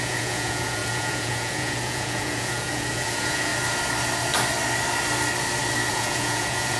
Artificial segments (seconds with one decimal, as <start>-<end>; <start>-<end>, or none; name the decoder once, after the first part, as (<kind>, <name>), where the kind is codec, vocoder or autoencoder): 0.0-3.5 (vocoder, Vocos); 5.9-6.8